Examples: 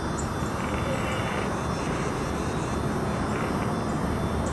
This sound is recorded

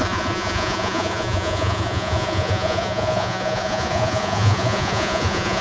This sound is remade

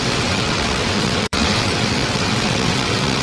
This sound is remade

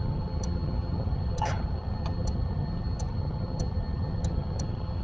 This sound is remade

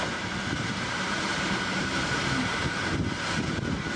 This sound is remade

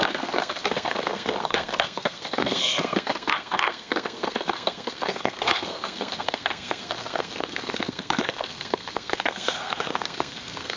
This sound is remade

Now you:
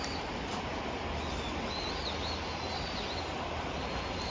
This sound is recorded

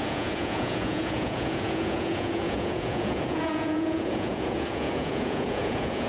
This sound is remade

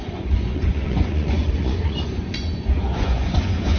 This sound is remade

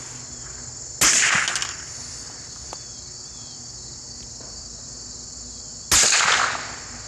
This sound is recorded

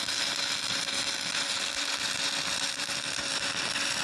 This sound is remade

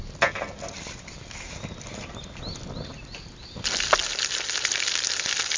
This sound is recorded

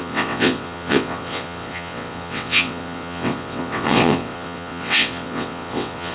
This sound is remade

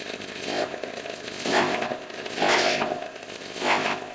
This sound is remade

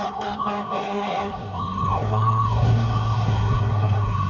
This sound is remade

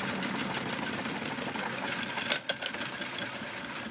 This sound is recorded